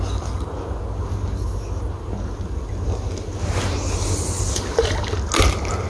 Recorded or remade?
recorded